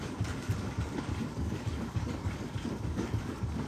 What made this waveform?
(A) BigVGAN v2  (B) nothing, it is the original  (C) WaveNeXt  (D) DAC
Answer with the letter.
D